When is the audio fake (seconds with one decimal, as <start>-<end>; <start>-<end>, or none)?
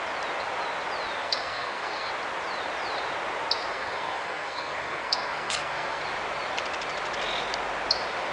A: 1.2-2.1; 3.7-6.0